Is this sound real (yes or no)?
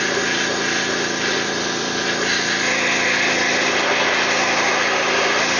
yes